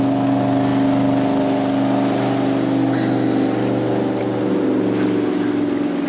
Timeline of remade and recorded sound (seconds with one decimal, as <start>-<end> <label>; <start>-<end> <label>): 0.0-6.1 recorded